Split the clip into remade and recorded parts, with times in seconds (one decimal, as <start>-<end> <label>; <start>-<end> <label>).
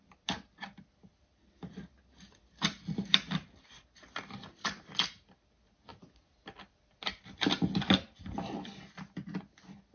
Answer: 0.0-9.9 recorded